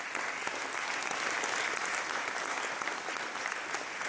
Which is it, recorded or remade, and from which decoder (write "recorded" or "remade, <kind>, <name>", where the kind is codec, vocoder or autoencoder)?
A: recorded